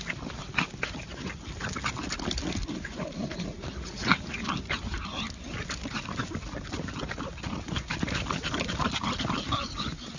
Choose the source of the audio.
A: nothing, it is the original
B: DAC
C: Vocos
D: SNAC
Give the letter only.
A